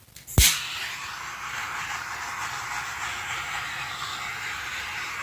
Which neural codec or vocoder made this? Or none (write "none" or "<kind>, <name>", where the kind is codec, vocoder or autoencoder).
none